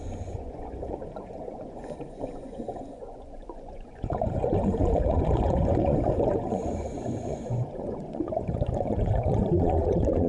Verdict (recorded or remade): remade